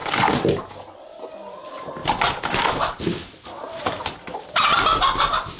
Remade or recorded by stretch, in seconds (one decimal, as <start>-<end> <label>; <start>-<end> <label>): 0.0-0.6 remade; 0.6-5.6 recorded